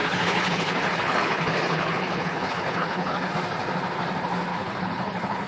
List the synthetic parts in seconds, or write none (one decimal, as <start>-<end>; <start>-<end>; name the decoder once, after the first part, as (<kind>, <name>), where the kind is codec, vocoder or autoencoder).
0.0-3.3 (codec, HILCodec); 4.5-5.5